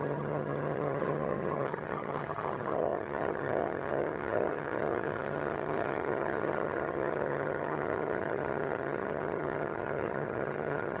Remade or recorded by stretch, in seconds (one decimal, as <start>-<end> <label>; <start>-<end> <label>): 0.0-11.0 remade